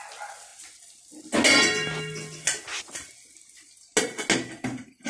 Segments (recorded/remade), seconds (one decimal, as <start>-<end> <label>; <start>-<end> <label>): 0.0-5.1 recorded